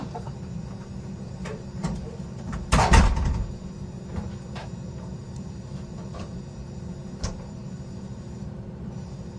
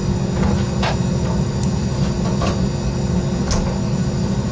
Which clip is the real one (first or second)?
second